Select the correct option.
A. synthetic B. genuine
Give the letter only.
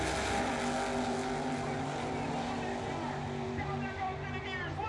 B